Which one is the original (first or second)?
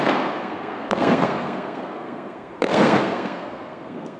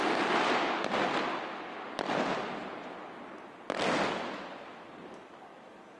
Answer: second